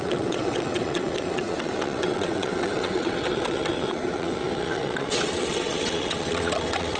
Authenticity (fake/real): fake